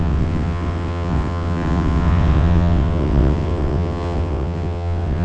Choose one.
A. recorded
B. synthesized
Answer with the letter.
B